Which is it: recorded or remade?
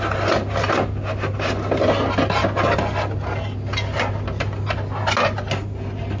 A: recorded